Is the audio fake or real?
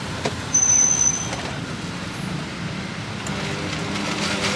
real